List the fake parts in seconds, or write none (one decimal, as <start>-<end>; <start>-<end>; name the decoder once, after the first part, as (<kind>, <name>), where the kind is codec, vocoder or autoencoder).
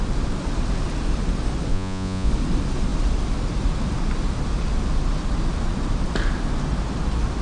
1.7-2.3 (vocoder, Vocos)